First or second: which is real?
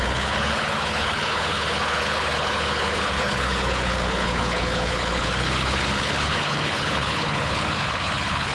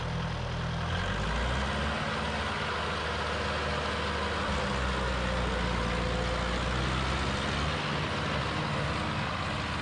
second